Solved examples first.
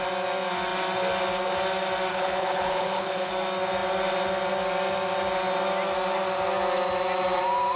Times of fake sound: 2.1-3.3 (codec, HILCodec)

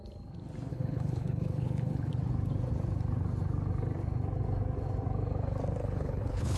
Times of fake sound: 0.7-2.1 (codec, HILCodec); 5.8-6.6

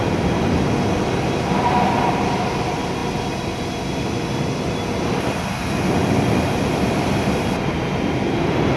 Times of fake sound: none